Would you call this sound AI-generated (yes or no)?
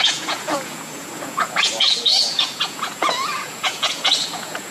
yes